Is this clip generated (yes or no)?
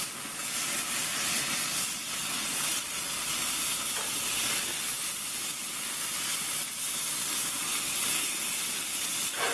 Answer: no